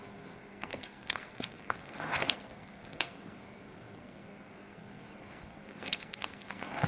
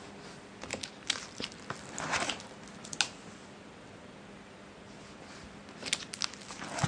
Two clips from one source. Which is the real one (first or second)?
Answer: second